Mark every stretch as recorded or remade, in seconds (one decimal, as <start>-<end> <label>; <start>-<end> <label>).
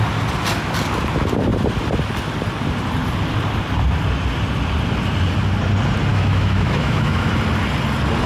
0.0-6.1 recorded; 6.1-7.3 remade; 7.3-8.3 recorded